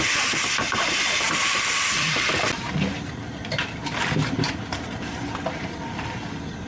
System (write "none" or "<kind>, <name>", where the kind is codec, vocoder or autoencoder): none